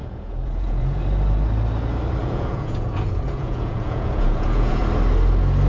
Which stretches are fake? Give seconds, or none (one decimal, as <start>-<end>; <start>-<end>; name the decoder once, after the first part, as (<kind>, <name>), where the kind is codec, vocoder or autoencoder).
0.0-1.0 (vocoder, Vocos); 2.2-4.8

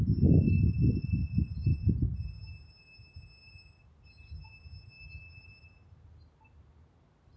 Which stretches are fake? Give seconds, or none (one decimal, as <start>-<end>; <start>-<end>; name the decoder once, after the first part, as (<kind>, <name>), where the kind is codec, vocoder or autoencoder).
none

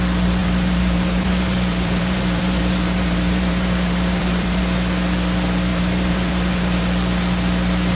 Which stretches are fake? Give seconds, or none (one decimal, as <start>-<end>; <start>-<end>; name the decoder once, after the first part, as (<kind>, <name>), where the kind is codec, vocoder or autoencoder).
0.4-4.6 (vocoder, BigVGAN v2); 5.7-6.8

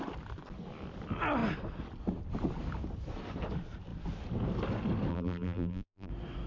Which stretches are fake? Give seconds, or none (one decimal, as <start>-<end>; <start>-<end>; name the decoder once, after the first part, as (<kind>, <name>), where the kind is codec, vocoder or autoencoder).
5.1-6.1 (vocoder, BigVGAN v2)

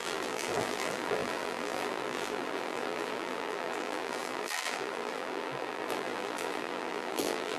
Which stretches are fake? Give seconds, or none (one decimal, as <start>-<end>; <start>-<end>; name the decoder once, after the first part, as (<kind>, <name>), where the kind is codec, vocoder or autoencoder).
0.0-7.6 (vocoder, BigVGAN v2)